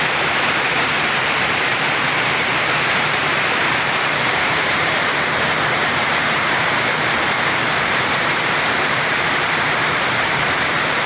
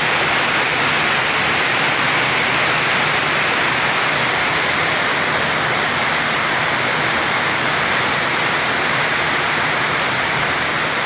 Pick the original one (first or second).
second